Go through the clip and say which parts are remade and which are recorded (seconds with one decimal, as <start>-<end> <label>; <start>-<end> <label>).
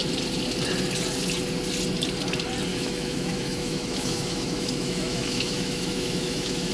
0.0-2.7 recorded; 2.7-6.7 remade